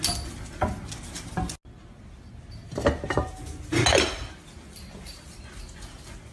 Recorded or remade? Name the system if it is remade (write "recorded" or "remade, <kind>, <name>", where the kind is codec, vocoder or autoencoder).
recorded